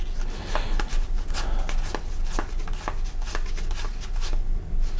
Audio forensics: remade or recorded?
recorded